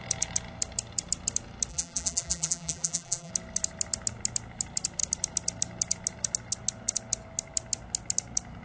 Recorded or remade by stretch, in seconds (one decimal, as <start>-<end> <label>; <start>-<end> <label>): 0.0-1.7 recorded; 1.7-3.3 remade; 3.3-8.6 recorded